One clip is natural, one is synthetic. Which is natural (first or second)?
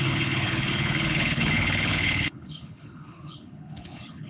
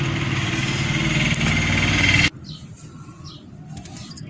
second